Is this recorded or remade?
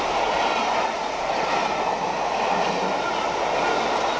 recorded